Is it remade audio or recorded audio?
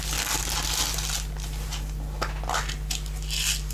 recorded